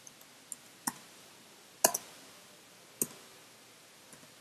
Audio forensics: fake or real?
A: real